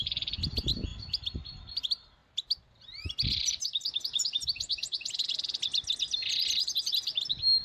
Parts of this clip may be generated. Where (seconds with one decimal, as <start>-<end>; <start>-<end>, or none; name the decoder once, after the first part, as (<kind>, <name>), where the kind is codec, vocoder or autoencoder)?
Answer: 0.9-1.8 (vocoder, BigVGAN v2); 2.2-6.8